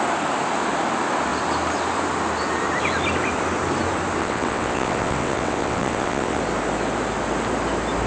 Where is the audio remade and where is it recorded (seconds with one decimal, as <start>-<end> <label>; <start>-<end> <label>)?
0.0-4.2 recorded; 4.2-6.4 remade; 6.4-8.1 recorded